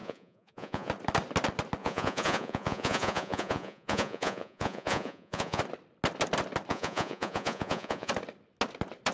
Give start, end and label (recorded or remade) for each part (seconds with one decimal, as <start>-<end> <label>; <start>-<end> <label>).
0.0-0.9 remade; 0.9-1.8 recorded; 1.8-5.6 remade; 5.6-6.7 recorded; 6.7-8.1 remade; 8.1-9.1 recorded